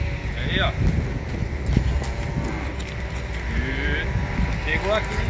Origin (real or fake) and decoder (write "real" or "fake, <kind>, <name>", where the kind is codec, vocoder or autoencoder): real